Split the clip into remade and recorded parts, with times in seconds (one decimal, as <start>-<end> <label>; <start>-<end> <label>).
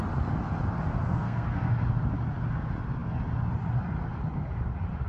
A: 0.0-0.9 recorded; 0.9-1.7 remade; 1.7-5.1 recorded